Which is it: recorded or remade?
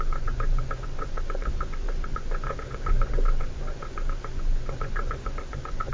remade